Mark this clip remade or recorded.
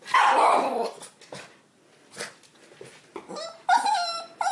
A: recorded